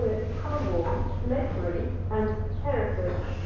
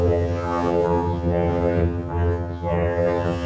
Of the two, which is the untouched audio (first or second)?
first